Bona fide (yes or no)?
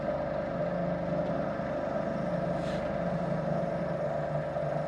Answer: yes